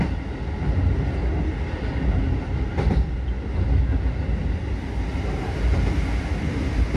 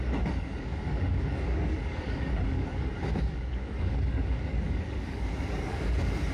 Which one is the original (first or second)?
first